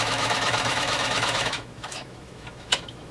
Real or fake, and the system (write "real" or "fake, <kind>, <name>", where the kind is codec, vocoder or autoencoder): fake, autoencoder, DAC-VAE